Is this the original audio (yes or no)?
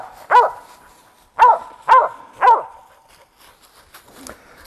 yes